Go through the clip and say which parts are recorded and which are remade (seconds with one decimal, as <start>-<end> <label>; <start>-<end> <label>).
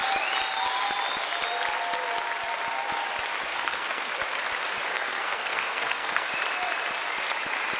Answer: 0.0-3.5 recorded; 3.5-4.1 remade; 4.1-4.9 recorded; 4.9-6.3 remade; 6.3-7.8 recorded